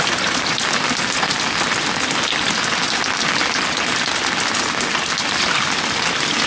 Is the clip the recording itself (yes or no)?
yes